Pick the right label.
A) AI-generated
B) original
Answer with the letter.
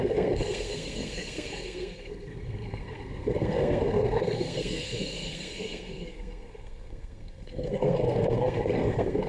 A